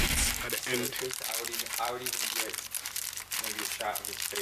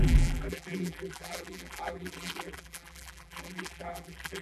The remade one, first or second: second